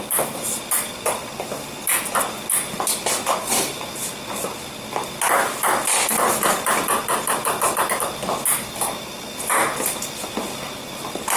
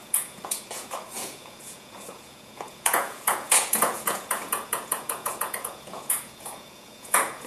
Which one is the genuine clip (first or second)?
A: first